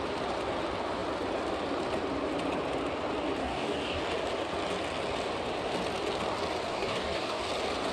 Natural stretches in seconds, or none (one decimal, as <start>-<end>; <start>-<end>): 0.0-3.4; 4.0-6.7; 7.4-7.9